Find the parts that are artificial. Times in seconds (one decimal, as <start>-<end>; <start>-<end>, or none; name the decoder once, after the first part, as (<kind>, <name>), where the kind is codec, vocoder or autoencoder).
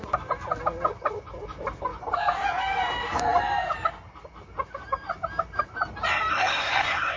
6.3-7.2 (codec, SNAC)